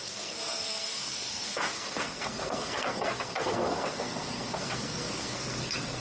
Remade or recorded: remade